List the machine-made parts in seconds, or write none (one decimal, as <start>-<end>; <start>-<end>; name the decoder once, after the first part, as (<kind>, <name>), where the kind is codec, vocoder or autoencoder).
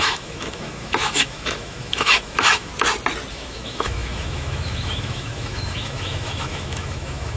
0.0-2.7 (autoencoder, DAC-VAE); 3.3-7.4